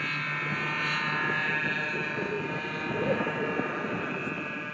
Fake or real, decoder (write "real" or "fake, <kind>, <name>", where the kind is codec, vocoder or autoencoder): real